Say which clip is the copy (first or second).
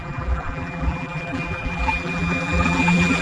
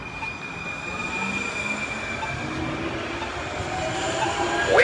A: first